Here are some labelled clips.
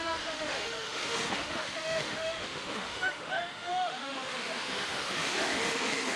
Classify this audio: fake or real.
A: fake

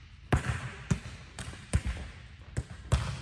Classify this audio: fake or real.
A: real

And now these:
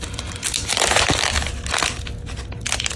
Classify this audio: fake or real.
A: real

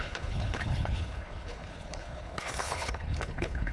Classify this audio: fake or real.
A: fake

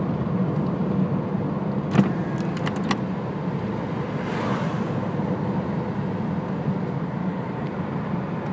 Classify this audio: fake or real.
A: real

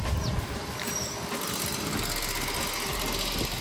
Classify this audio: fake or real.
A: real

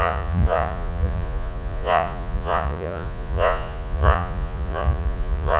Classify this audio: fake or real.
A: fake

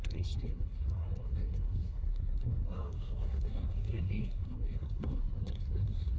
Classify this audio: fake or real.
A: fake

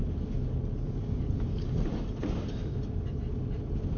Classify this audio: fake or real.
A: real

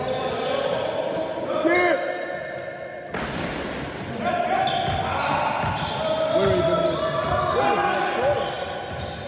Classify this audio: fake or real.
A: real